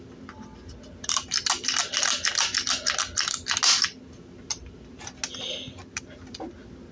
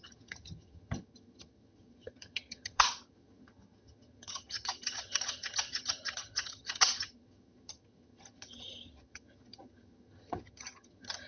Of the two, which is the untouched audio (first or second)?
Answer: first